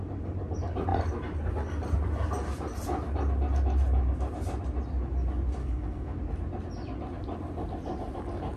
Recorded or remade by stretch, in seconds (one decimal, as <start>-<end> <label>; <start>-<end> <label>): 0.0-5.6 recorded; 5.6-6.2 remade; 6.2-8.6 recorded